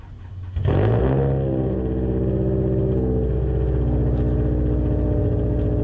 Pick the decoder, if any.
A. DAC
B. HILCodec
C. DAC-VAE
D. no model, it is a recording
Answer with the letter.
D